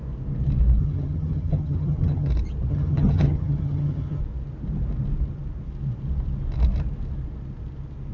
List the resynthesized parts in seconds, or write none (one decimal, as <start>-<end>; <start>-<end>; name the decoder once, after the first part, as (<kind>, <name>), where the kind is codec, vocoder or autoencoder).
0.8-2.3 (vocoder, HiFi-GAN); 2.7-4.2

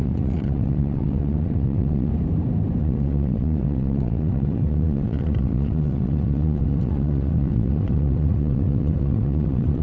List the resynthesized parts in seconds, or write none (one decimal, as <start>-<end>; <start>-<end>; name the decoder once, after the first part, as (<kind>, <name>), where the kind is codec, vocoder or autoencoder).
0.0-2.1 (vocoder, WaveNeXt); 2.8-9.8

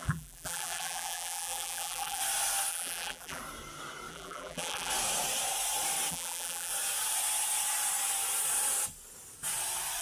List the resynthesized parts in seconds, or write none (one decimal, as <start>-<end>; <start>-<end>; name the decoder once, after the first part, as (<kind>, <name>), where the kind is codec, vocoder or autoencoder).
0.0-2.2 (vocoder, BigVGAN v2); 2.7-3.4; 4.1-4.9; 6.1-6.7

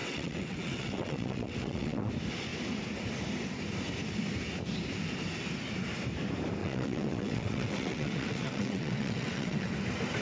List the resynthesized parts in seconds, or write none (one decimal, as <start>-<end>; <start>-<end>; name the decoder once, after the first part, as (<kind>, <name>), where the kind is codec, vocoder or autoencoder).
0.0-2.1 (vocoder, WaveNeXt); 6.6-9.7

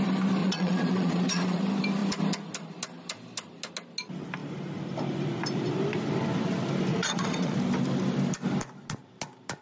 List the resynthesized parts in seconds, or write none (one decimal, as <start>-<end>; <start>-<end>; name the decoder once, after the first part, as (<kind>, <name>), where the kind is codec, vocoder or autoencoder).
0.4-1.6 (vocoder, Vocos); 6.9-7.6